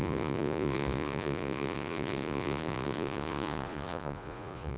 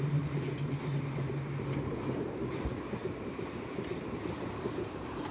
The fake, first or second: first